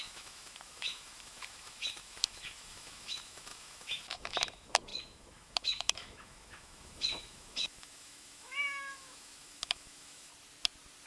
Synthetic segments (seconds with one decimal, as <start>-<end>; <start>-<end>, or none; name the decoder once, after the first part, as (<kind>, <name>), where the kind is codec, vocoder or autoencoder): 0.0-10.3 (autoencoder, DAC-VAE)